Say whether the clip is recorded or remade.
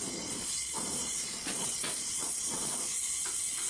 remade